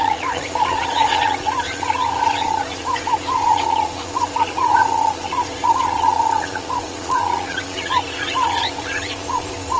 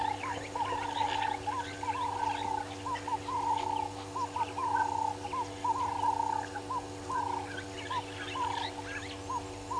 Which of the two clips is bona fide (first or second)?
second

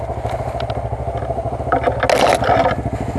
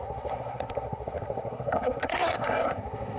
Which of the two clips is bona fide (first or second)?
first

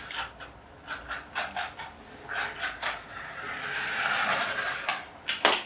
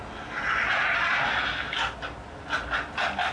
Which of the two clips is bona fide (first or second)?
second